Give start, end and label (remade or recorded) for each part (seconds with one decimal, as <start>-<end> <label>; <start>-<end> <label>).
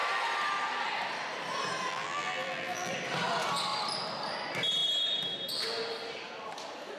0.0-1.9 recorded; 1.9-2.9 remade; 2.9-7.0 recorded